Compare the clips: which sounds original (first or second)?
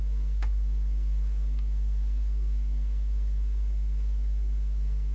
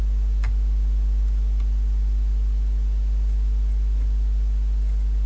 second